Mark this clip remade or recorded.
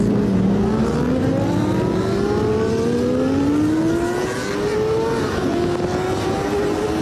recorded